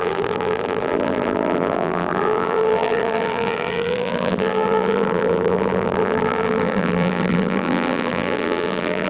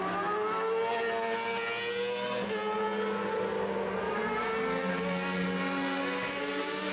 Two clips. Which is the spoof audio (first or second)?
first